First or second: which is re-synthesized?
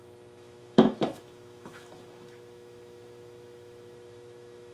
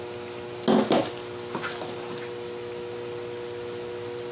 first